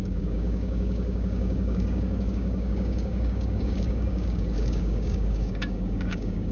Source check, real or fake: fake